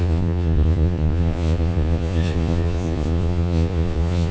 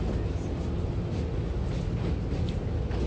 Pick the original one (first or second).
second